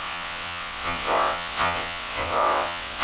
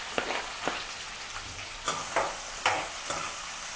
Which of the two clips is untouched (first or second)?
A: second